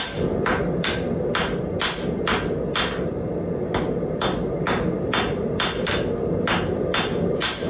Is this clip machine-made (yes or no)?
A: no